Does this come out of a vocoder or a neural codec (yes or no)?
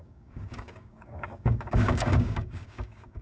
yes